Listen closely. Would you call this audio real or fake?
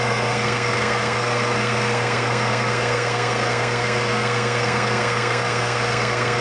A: fake